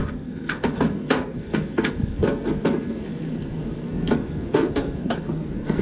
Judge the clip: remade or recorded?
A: remade